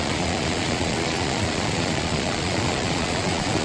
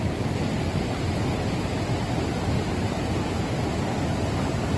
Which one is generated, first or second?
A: first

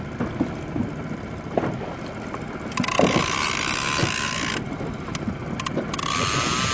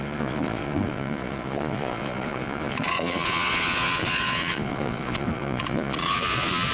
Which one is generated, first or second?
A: second